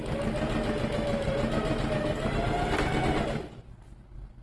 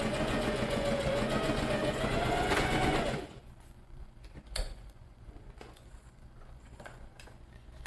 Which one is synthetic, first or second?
second